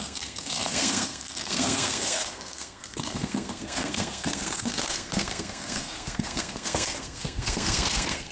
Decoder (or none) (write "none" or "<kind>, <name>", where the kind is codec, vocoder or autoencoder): codec, SNAC